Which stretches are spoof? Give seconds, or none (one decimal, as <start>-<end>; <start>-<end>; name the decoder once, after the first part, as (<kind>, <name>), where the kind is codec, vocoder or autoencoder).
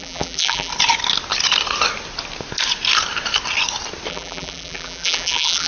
0.0-0.7 (vocoder, BigVGAN v2); 4.1-5.7